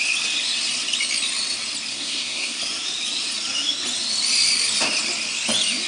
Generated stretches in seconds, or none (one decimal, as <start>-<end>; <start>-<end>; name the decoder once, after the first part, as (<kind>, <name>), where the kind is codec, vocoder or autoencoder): 1.9-2.6 (codec, SNAC)